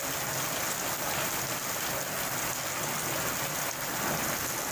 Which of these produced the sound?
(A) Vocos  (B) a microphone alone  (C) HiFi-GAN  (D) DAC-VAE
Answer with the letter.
B